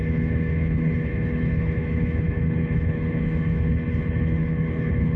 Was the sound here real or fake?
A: fake